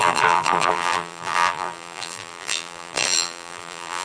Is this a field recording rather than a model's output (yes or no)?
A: no